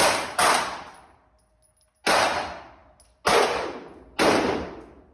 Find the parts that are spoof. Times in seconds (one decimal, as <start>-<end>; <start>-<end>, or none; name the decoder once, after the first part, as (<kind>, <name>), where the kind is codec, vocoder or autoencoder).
none